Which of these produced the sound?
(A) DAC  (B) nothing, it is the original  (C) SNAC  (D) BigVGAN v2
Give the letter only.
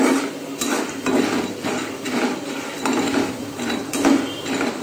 D